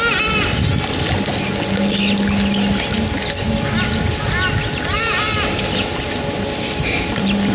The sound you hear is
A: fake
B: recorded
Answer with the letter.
B